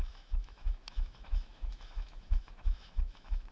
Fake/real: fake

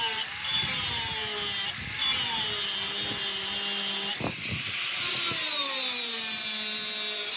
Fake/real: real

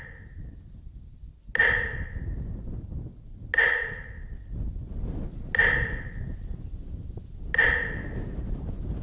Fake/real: real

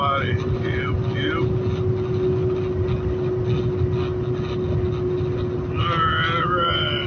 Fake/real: real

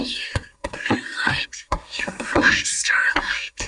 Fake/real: fake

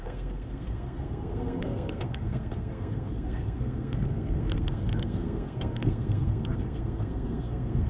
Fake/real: fake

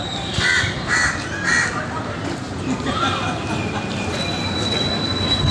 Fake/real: real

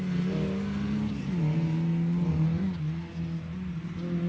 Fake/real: real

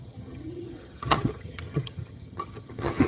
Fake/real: fake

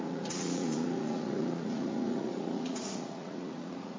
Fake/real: fake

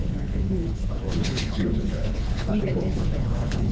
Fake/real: fake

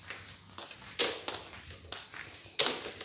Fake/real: real